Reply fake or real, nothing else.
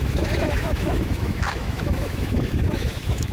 fake